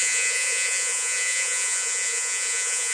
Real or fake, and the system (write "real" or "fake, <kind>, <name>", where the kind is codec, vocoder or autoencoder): fake, vocoder, Vocos